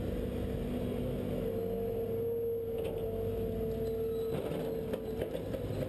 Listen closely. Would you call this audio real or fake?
real